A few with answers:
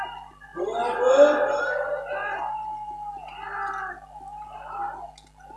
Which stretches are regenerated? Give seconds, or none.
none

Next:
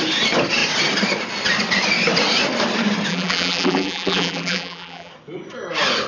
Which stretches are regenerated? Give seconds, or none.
3.1-5.1 (vocoder, BigVGAN v2)

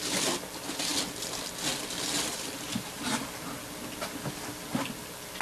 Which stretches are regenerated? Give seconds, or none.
0.0-0.9 (vocoder, BigVGAN v2); 2.3-5.4

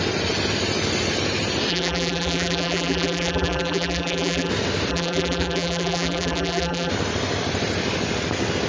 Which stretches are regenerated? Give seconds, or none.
1.7-4.5 (vocoder, BigVGAN v2); 4.9-6.9

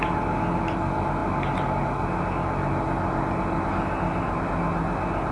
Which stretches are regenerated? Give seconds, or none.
none

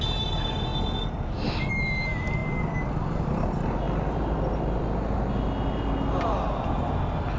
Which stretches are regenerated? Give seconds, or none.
none

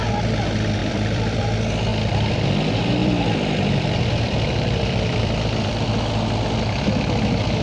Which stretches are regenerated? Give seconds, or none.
0.8-1.4 (vocoder, BigVGAN v2); 1.9-2.4; 3.0-6.0

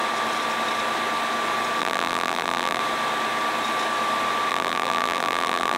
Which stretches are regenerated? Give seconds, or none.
1.8-2.8 (vocoder, BigVGAN v2); 4.5-5.8